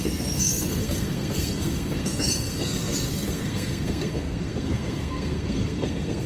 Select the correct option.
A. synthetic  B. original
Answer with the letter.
A